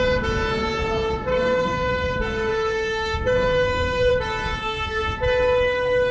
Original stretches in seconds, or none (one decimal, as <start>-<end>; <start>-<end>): 0.0-1.3; 1.9-2.5; 4.1-4.6; 5.2-6.1